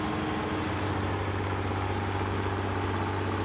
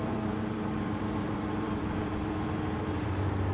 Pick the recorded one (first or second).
first